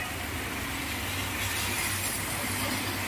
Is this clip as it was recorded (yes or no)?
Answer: yes